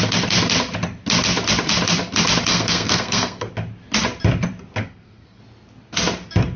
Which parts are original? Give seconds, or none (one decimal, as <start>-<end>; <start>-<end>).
0.0-2.5; 3.5-4.8; 5.4-6.6